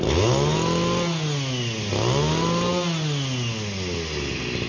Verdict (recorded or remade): recorded